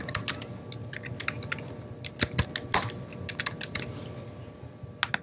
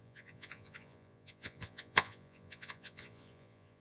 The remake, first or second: second